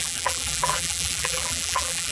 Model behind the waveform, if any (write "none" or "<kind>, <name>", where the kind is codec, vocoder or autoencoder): vocoder, BigVGAN v2